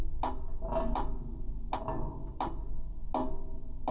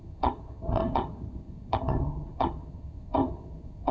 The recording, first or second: first